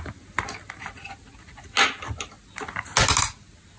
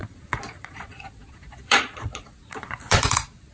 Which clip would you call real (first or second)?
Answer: first